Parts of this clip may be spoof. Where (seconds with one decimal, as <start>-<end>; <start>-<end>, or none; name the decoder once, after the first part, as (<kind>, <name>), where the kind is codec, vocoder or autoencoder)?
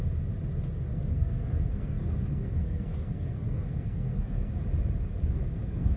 0.9-4.5 (codec, SNAC); 5.2-6.0